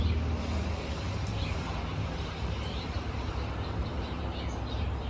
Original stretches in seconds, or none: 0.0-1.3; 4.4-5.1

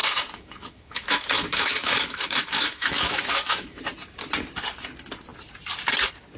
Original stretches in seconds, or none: 3.8-6.4

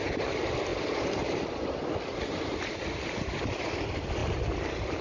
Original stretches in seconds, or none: 0.0-0.7; 3.5-4.2

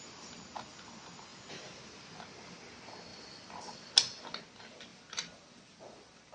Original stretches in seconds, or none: 0.0-3.1; 3.8-4.9

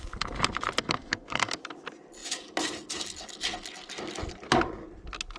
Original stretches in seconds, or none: 0.0-0.8; 1.6-5.4

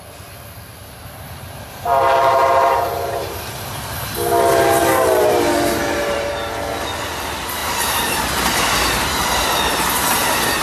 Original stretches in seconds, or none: 0.0-0.8; 3.8-4.8; 6.3-7.6; 8.2-10.6

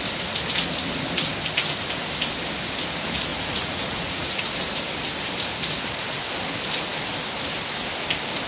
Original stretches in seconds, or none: 0.0-3.3; 4.4-8.5

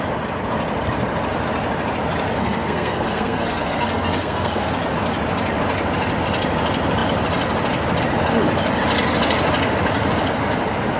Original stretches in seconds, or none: 0.0-2.4; 4.7-11.0